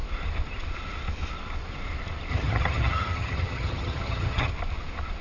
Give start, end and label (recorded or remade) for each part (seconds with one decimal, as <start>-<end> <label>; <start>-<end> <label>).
0.0-2.3 recorded; 2.3-4.5 remade; 4.5-5.2 recorded